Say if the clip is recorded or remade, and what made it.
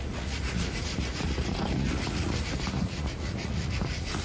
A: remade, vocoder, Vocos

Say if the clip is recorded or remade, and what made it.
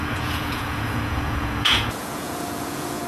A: remade, vocoder, Vocos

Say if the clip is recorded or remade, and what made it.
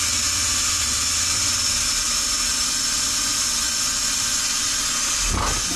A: recorded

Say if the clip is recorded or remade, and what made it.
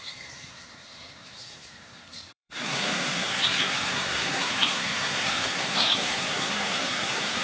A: remade, codec, SNAC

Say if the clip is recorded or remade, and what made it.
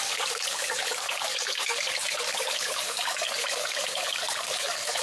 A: remade, codec, DAC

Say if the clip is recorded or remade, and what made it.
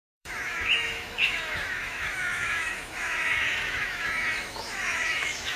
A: remade, autoencoder, DAC-VAE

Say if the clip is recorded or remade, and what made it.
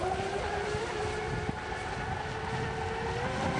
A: recorded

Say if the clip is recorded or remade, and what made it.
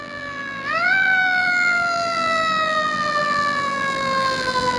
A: remade, vocoder, BigVGAN v2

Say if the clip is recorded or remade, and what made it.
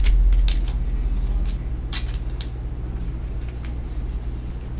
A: recorded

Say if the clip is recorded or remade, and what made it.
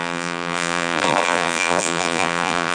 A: remade, vocoder, BigVGAN v2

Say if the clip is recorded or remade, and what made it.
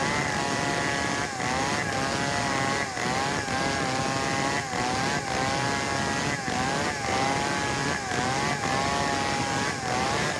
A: recorded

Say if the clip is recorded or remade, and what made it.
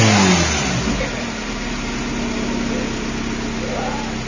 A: recorded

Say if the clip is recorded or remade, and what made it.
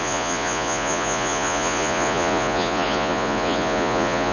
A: remade, vocoder, Vocos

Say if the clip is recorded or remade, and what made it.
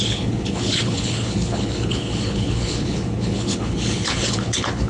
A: remade, codec, HILCodec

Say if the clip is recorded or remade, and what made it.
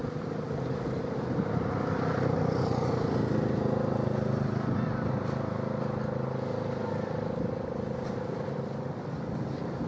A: recorded